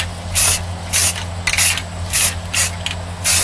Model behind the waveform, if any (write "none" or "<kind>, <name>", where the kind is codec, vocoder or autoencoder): none